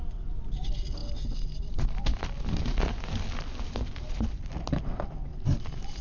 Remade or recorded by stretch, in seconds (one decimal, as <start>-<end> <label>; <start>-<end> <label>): 0.0-6.0 recorded